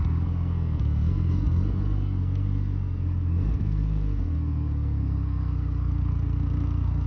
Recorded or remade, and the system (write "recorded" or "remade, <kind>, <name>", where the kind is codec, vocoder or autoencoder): remade, codec, SNAC